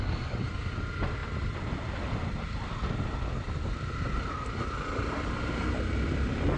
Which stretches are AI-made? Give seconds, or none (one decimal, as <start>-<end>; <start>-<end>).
0.0-1.2; 3.4-6.6